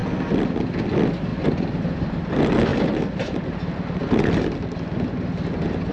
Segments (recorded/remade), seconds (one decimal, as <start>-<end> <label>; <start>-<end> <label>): 0.0-5.9 recorded